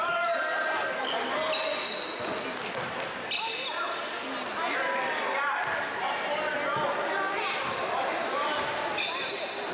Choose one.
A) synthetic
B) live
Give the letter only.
B